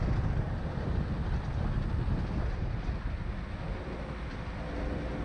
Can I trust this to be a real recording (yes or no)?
yes